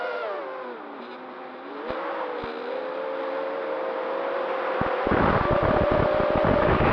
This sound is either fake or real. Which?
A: real